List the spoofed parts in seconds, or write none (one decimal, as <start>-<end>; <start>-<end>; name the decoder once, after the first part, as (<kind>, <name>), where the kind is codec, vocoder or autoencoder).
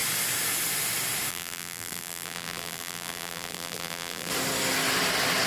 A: 1.3-4.3 (vocoder, BigVGAN v2)